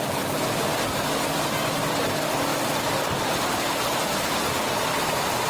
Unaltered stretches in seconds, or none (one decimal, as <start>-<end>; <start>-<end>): 0.0-5.5

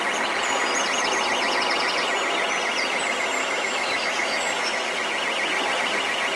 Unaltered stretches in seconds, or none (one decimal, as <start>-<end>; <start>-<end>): 0.0-3.4; 4.9-6.4

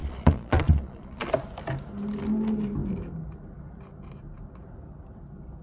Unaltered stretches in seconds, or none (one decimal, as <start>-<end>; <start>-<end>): 1.3-5.6

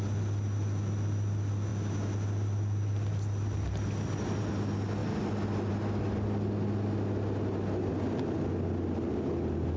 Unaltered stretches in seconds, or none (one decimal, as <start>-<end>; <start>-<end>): 0.0-9.8

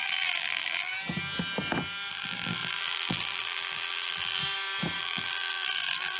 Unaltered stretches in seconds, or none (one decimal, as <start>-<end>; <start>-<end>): 0.9-2.1; 4.4-5.0

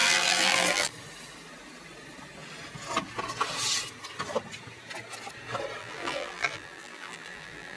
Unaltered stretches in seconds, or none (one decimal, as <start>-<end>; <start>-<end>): 0.9-5.8

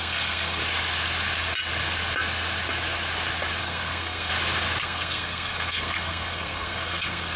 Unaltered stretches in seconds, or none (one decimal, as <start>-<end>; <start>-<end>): 0.6-3.6; 4.3-4.8

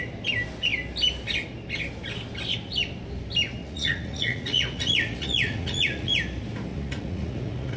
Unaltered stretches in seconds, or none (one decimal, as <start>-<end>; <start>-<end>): 0.0-3.6; 6.1-6.7